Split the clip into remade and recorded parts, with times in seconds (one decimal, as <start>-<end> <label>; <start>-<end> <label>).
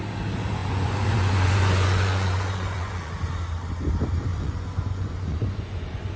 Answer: 0.0-0.6 recorded; 0.6-3.2 remade; 3.2-4.3 recorded; 4.3-6.2 remade